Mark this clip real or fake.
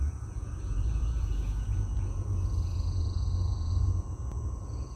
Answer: fake